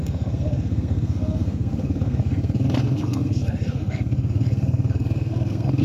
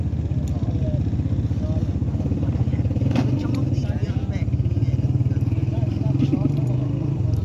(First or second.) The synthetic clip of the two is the first